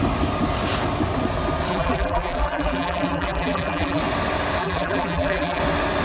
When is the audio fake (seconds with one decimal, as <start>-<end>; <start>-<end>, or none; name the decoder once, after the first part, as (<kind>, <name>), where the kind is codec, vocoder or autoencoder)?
1.7-4.0 (vocoder, BigVGAN v2); 4.6-5.6